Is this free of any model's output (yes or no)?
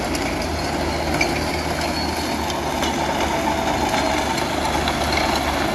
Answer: yes